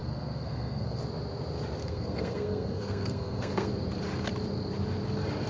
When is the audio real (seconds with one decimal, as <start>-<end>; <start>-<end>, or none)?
1.0-1.8; 3.7-5.5